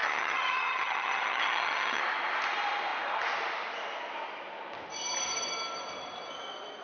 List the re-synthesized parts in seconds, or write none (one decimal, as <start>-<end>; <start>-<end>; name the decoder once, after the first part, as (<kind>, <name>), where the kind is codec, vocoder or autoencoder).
0.0-2.0 (vocoder, HiFi-GAN)